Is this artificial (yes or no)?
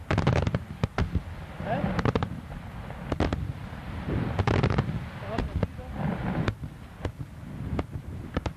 no